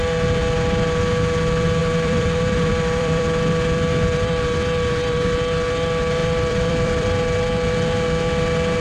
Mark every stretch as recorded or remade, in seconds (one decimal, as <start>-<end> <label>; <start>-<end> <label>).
0.0-1.8 recorded; 1.8-3.2 remade; 3.2-6.2 recorded; 6.2-7.2 remade; 7.2-8.8 recorded

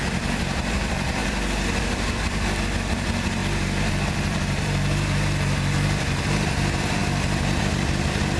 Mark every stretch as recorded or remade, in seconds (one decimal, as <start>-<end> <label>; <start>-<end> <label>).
0.0-3.4 remade; 3.4-3.9 recorded; 3.9-7.0 remade; 7.0-7.6 recorded; 7.6-8.4 remade

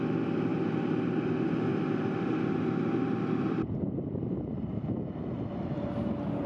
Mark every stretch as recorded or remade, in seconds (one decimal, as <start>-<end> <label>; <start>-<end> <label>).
0.0-0.5 recorded; 0.5-1.2 remade; 1.2-1.7 recorded; 1.7-5.5 remade; 5.5-6.5 recorded

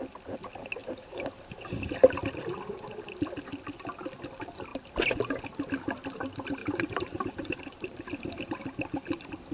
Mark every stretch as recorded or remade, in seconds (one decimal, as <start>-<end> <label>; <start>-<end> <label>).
0.0-0.8 recorded; 0.8-1.9 remade; 1.9-6.6 recorded; 6.6-8.0 remade; 8.0-9.5 recorded

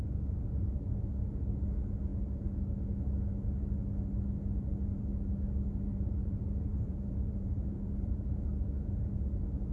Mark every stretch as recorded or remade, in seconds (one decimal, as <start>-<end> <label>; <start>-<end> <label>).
0.0-5.9 recorded; 5.9-8.5 remade; 8.5-9.7 recorded

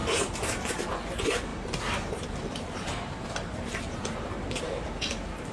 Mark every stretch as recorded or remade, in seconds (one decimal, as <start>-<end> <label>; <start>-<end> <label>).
0.0-0.7 remade; 0.7-1.5 recorded; 1.5-4.8 remade; 4.8-5.5 recorded

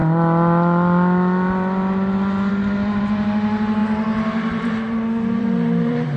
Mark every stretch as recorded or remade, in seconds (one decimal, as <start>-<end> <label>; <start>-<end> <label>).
0.0-3.8 recorded; 3.8-6.2 remade

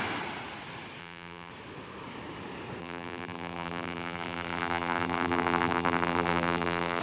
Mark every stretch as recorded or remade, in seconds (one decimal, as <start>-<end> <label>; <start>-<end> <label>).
0.0-1.0 recorded; 1.0-1.5 remade; 1.5-2.8 recorded; 2.8-7.0 remade